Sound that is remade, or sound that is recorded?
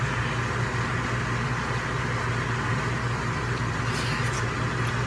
recorded